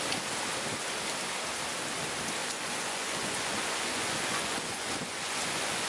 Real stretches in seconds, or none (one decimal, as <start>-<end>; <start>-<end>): 0.0-2.4